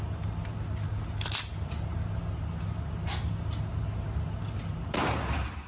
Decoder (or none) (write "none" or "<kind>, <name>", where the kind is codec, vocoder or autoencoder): none